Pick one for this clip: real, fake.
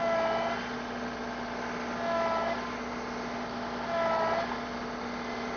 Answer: real